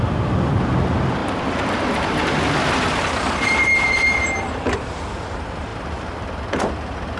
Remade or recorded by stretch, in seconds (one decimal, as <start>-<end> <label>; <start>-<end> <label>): 0.0-1.2 recorded; 1.2-5.0 remade; 5.0-5.7 recorded; 5.7-6.7 remade; 6.7-7.2 recorded